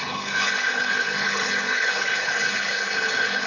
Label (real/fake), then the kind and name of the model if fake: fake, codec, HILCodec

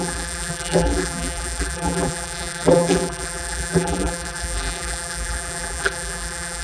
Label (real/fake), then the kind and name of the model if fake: fake, vocoder, BigVGAN v2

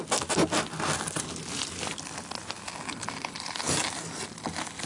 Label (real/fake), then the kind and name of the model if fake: real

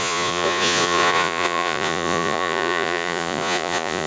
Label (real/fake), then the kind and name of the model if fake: fake, vocoder, Vocos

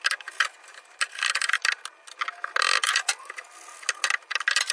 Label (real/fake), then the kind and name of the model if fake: real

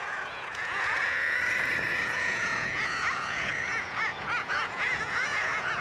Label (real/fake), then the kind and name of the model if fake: fake, vocoder, Vocos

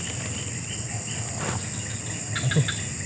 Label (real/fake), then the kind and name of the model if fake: real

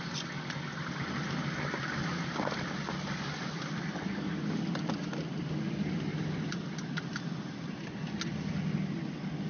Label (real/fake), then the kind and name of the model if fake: real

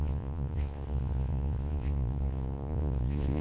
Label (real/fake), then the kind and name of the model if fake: fake, vocoder, Vocos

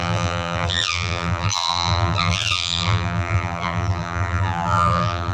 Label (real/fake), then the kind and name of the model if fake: fake, vocoder, BigVGAN v2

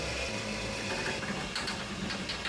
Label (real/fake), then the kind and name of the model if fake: real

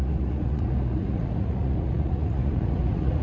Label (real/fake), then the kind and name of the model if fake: fake, vocoder, Vocos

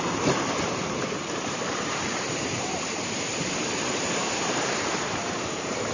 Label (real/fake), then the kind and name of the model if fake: fake, vocoder, BigVGAN v2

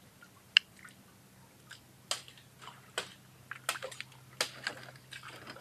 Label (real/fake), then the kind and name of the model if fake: real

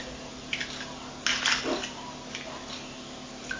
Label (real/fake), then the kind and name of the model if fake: real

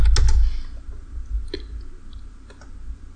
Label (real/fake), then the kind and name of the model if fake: real